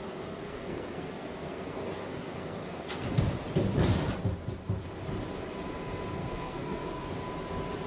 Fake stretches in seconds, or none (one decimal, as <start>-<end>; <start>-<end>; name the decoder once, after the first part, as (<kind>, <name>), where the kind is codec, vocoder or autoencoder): 0.0-3.2 (codec, SNAC); 6.2-7.1